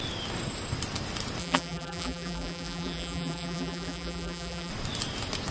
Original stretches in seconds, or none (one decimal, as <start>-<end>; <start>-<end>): 0.0-1.4; 4.7-5.5